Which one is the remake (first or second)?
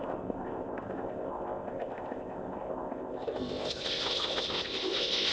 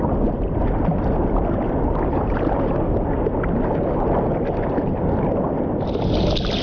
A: first